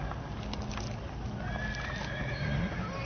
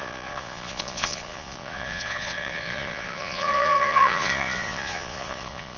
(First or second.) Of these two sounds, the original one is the first